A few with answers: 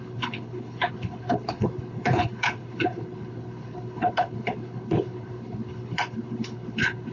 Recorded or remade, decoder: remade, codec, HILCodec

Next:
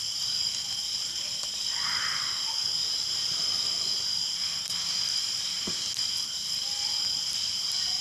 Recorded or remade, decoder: recorded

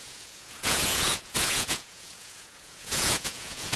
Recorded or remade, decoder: remade, vocoder, Vocos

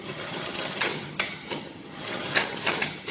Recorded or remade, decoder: remade, vocoder, HiFi-GAN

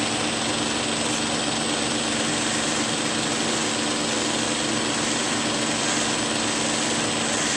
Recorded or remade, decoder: recorded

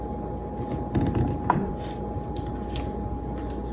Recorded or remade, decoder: recorded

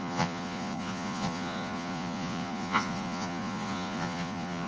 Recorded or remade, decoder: remade, vocoder, Vocos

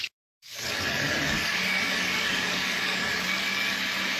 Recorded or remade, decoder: remade, codec, DAC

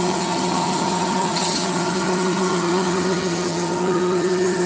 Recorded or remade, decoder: remade, vocoder, HiFi-GAN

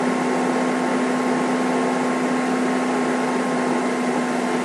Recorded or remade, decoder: recorded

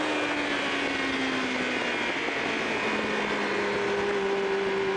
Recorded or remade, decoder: recorded